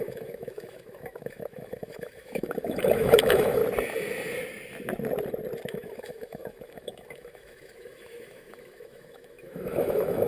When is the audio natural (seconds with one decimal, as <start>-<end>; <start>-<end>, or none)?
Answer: 3.6-5.7